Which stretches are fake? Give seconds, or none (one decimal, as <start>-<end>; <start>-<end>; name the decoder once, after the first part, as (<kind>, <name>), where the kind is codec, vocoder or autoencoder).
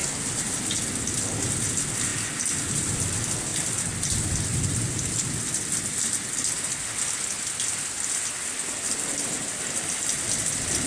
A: none